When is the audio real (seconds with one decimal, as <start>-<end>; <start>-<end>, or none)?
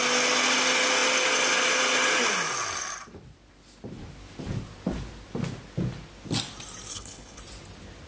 0.0-6.9; 7.4-8.1